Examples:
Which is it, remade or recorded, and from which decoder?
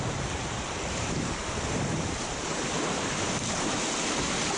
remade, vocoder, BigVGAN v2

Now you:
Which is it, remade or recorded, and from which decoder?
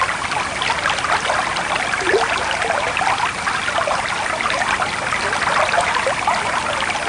recorded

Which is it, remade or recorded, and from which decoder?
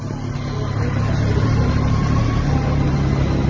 recorded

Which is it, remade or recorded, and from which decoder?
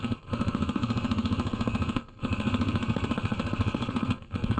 remade, codec, SNAC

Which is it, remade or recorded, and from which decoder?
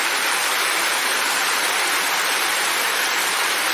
remade, vocoder, BigVGAN v2